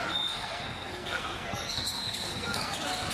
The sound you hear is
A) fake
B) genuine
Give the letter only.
A